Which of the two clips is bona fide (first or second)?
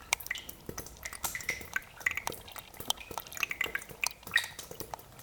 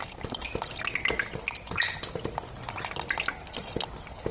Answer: second